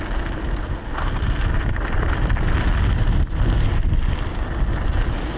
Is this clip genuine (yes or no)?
yes